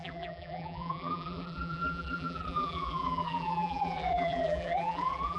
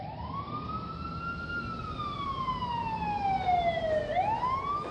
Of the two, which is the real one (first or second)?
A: second